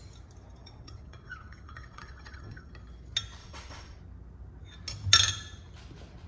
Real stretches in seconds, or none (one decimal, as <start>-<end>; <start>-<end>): 0.0-0.6; 2.7-3.4; 4.0-6.3